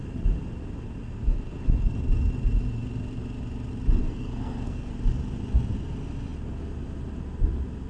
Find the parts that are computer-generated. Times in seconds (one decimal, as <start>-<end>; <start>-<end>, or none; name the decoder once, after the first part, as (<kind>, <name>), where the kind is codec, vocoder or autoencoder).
4.0-4.9 (codec, SNAC)